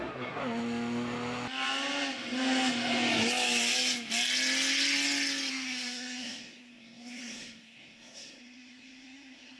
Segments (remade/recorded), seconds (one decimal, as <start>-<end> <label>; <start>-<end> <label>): 0.0-0.4 remade; 0.4-5.5 recorded; 5.5-9.6 remade